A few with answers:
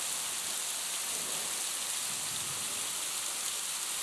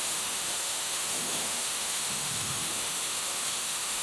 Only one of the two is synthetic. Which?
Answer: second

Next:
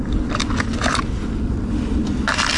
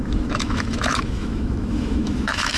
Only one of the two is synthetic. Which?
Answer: second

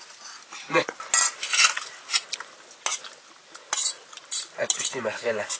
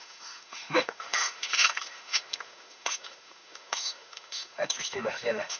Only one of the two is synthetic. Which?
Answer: second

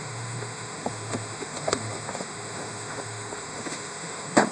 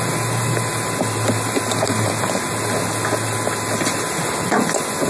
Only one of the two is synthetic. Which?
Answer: first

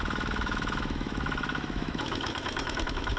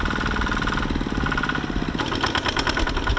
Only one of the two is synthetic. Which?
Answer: first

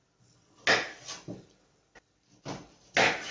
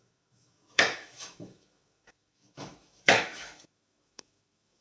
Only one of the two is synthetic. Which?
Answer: second